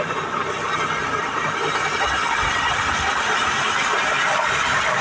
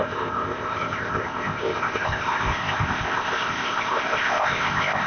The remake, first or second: second